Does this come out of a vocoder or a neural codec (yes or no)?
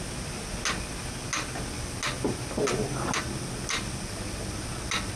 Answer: no